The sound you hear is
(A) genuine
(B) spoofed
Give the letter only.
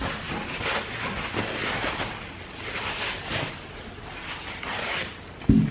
A